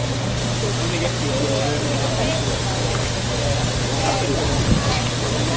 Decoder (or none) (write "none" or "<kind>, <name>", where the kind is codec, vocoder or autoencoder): none